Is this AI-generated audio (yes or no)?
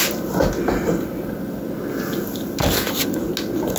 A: no